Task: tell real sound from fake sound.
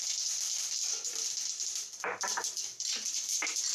real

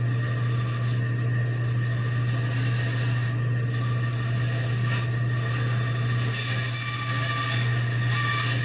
real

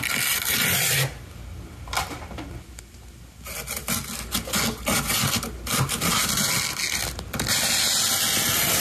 real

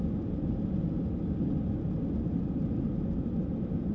real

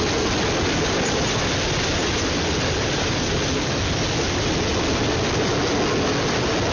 real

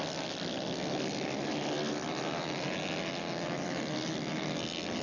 real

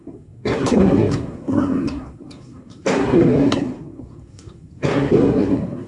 fake